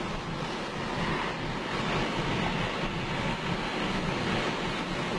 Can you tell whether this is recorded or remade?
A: recorded